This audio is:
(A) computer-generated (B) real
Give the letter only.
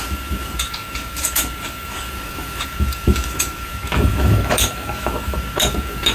A